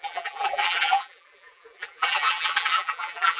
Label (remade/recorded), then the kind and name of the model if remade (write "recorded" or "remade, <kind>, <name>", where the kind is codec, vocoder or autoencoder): remade, vocoder, BigVGAN v2